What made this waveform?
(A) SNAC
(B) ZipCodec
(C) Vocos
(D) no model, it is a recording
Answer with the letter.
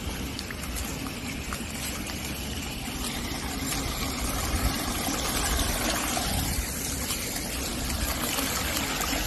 D